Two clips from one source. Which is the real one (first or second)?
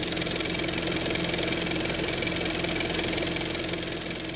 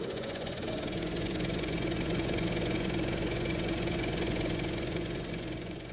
first